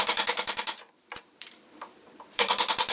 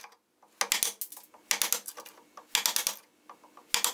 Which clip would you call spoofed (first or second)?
first